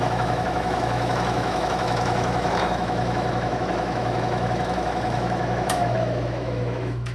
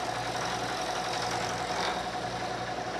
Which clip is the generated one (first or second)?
first